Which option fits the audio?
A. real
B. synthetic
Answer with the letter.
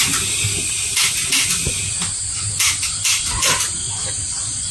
A